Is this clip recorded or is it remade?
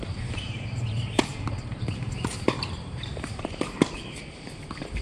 remade